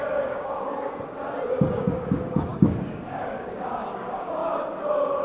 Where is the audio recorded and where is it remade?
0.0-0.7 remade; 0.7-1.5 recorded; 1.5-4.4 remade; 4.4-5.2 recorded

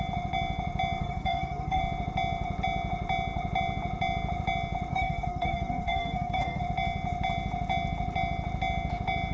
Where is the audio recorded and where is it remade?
0.0-1.0 recorded; 1.0-1.8 remade; 1.8-4.9 recorded; 4.9-6.6 remade; 6.6-9.3 recorded

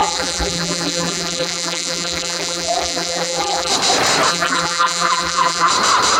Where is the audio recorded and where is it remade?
0.0-3.7 remade; 3.7-4.3 recorded; 4.3-5.7 remade; 5.7-6.2 recorded